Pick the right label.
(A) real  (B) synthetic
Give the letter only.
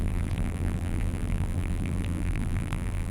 B